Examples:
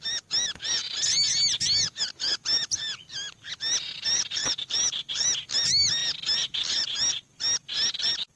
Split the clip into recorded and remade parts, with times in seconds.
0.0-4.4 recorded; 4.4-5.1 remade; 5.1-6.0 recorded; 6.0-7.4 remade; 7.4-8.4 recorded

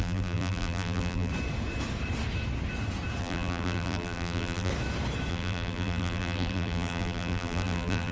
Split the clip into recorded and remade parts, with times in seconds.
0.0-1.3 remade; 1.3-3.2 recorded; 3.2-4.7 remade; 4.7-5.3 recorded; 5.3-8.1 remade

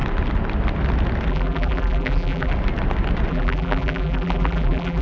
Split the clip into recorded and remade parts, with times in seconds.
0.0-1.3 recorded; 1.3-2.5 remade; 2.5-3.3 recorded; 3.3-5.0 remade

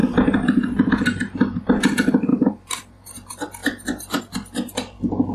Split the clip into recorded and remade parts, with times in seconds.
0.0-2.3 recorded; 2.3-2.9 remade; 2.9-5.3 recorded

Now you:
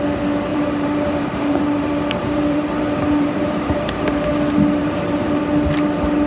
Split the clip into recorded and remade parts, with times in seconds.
0.0-0.5 recorded; 0.5-4.3 remade; 4.3-4.8 recorded; 4.8-5.4 remade; 5.4-6.3 recorded

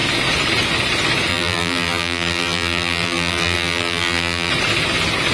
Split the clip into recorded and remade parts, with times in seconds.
0.0-1.3 recorded; 1.3-4.5 remade; 4.5-5.3 recorded

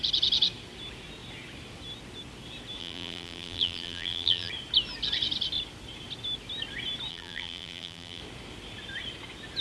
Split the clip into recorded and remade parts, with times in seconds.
0.0-2.8 recorded; 2.8-4.5 remade; 4.5-7.1 recorded; 7.1-8.2 remade; 8.2-9.6 recorded